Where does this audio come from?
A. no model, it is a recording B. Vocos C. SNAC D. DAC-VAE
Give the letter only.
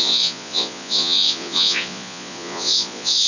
B